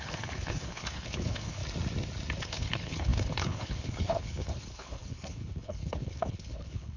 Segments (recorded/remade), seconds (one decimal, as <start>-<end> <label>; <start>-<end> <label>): 0.0-1.6 remade; 1.6-2.4 recorded; 2.4-7.0 remade